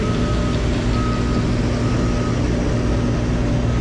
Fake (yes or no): no